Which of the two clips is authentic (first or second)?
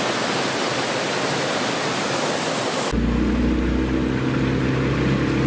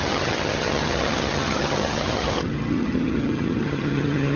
first